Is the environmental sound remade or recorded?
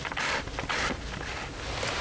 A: recorded